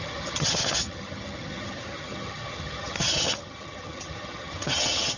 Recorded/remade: remade